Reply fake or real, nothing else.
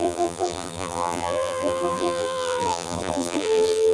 fake